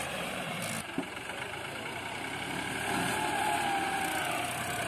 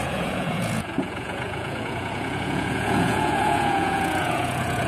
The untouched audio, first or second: first